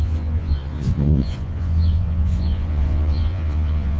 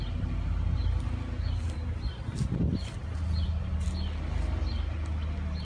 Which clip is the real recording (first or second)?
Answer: second